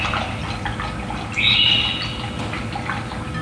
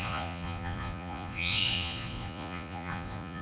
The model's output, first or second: second